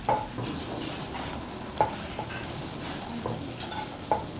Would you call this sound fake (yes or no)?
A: no